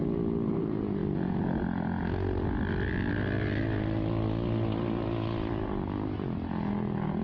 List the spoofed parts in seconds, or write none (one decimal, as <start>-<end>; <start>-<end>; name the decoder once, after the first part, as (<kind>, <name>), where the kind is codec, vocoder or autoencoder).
none